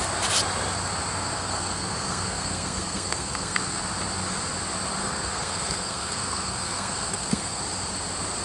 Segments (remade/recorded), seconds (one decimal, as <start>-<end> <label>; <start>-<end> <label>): 0.0-1.1 recorded; 1.1-3.8 remade; 3.8-5.0 recorded; 5.0-7.6 remade; 7.6-8.4 recorded